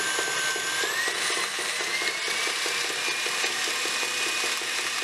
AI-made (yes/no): no